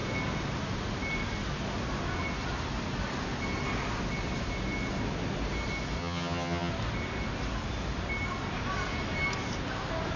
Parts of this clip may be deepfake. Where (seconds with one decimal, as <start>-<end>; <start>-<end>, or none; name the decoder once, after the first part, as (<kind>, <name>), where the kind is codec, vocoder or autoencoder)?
6.0-6.7 (vocoder, HiFi-GAN)